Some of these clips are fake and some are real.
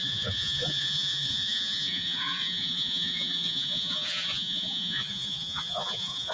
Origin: fake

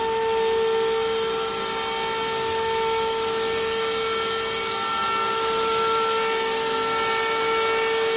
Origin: real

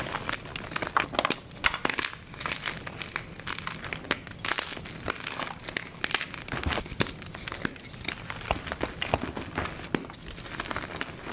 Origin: real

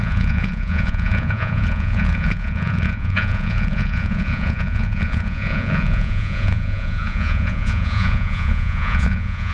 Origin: fake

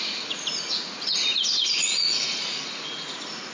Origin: fake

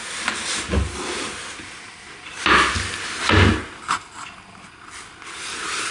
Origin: real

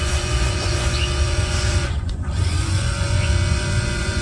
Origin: fake